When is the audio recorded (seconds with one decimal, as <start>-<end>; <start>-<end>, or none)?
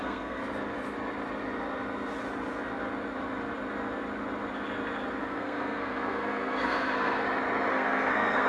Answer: 0.4-5.2; 7.2-7.7